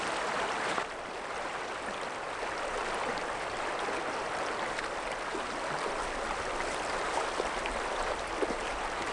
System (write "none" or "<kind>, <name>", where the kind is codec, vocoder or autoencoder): none